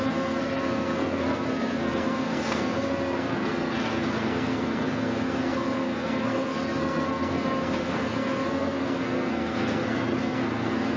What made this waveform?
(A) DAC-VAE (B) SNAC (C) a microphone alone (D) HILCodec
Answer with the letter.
B